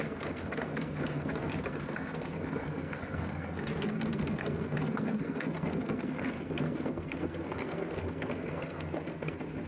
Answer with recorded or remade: remade